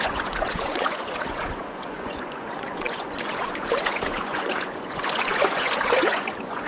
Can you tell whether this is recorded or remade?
remade